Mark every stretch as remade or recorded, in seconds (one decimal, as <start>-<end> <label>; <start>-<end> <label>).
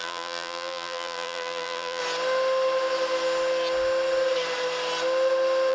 0.0-2.0 remade; 2.0-5.7 recorded